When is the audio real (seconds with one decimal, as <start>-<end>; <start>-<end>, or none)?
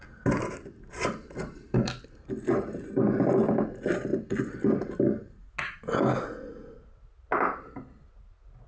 0.0-8.7